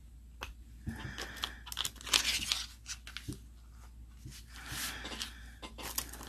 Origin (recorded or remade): recorded